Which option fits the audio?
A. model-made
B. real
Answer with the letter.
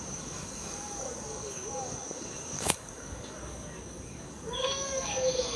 A